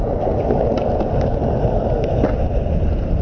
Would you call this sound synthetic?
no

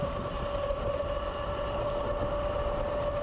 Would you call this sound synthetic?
no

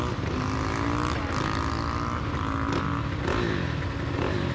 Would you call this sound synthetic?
no